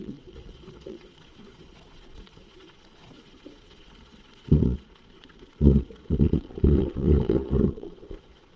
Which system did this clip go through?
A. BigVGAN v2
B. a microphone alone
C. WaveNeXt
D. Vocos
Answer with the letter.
D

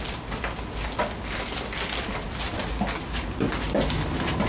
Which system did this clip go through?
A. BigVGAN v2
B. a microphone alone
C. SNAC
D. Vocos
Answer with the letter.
B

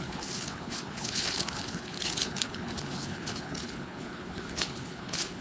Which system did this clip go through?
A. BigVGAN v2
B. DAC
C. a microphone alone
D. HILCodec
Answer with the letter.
D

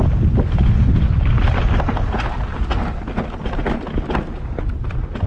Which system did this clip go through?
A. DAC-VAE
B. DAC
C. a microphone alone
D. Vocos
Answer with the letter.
C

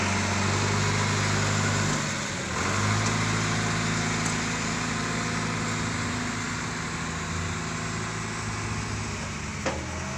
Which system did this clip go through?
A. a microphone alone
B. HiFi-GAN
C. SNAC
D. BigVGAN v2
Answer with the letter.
A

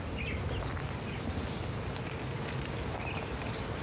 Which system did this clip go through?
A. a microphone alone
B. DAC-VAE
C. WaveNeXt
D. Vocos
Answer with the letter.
A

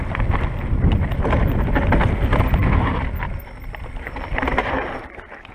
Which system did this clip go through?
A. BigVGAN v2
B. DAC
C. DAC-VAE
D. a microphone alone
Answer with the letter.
D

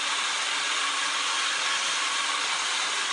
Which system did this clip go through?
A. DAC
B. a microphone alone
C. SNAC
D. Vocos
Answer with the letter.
B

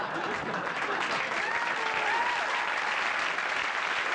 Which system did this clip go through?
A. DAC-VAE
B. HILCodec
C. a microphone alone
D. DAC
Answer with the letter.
C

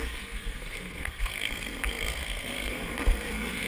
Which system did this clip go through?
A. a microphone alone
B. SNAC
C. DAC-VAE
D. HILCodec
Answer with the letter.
B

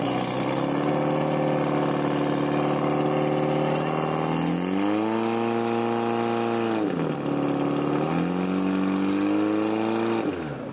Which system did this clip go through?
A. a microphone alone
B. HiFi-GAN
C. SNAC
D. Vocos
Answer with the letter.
A